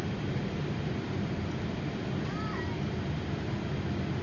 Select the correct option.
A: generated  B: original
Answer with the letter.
B